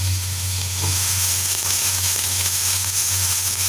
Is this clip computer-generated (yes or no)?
yes